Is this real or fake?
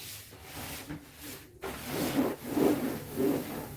fake